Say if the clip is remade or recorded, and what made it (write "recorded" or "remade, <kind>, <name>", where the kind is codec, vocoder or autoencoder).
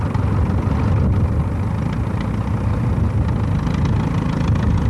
recorded